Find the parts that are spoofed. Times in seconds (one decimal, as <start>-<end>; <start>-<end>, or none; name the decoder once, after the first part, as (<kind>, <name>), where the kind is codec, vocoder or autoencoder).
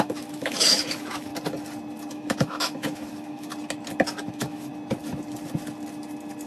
0.0-1.3 (autoencoder, DAC-VAE); 2.1-3.5; 4.2-4.7